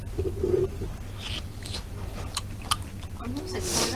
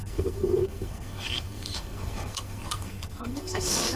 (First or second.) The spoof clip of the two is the second